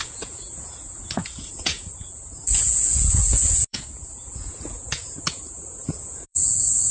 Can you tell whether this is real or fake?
fake